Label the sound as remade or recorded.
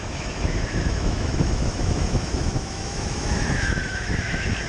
remade